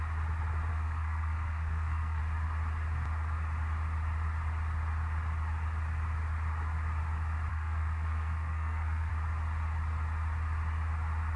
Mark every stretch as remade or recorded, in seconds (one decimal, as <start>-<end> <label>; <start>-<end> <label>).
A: 0.0-0.7 recorded; 0.7-2.2 remade; 2.2-7.5 recorded; 7.5-9.1 remade; 9.1-11.4 recorded